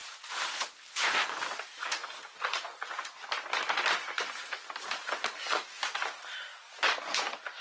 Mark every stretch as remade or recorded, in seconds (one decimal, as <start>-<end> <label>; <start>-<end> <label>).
0.0-7.6 recorded